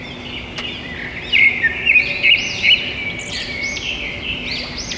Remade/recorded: recorded